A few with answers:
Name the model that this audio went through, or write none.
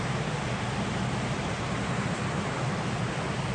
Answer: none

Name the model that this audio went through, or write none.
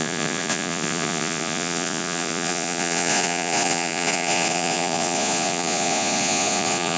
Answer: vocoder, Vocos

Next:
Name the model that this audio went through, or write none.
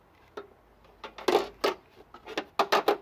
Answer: none